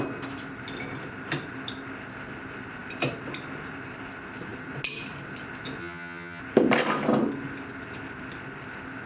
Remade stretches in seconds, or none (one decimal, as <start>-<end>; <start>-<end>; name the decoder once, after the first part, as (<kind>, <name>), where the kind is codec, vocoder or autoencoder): 5.8-6.4 (vocoder, HiFi-GAN)